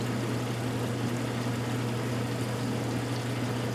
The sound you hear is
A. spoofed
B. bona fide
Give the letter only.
B